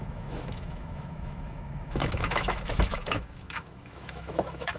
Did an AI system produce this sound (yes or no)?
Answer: yes